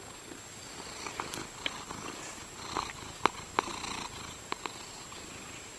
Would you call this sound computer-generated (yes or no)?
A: no